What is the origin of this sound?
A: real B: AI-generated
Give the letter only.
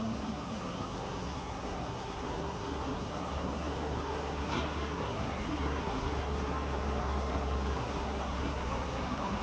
B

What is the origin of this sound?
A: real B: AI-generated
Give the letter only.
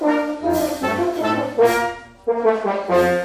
A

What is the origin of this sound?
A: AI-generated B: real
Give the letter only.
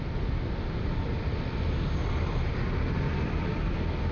B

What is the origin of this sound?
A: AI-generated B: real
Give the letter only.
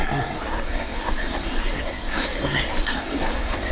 A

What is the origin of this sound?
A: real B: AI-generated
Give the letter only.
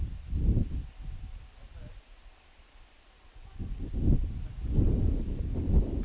A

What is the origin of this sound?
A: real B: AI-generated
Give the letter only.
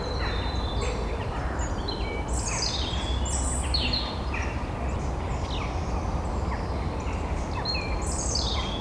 A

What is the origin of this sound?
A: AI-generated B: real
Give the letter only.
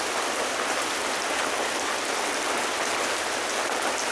B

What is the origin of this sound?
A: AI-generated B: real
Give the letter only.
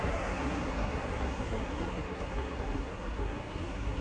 A